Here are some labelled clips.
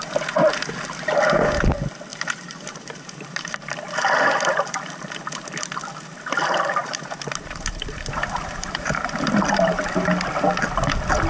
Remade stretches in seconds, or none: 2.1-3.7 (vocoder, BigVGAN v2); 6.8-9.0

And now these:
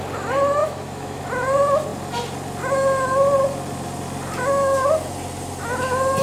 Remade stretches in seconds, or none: 0.6-1.2 (autoencoder, DAC-VAE)

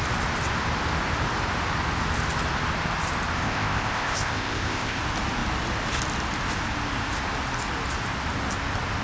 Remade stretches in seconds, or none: 3.4-5.0 (codec, ZipCodec)

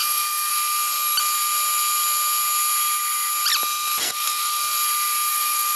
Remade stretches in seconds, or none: 0.0-0.5 (codec, SNAC); 4.0-4.6; 5.3-5.8

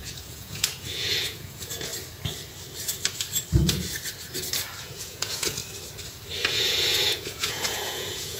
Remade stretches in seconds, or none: 0.0-1.9 (vocoder, Vocos); 4.8-5.6; 6.5-8.4